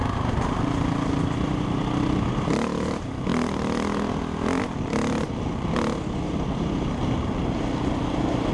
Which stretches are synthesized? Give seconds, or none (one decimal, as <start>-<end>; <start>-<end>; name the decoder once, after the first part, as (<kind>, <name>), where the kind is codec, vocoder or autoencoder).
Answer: none